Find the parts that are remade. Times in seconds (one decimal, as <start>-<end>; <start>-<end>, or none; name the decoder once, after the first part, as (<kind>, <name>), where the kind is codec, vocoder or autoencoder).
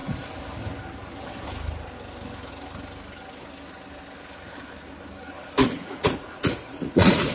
5.6-7.3 (vocoder, Vocos)